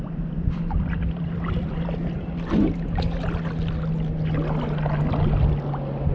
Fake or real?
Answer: real